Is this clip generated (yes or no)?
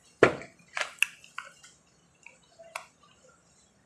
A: no